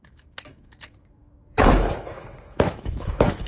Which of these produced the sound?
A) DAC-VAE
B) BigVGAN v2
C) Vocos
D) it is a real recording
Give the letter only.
A